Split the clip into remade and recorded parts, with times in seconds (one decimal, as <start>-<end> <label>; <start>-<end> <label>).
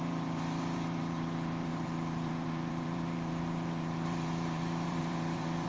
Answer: 0.0-5.7 remade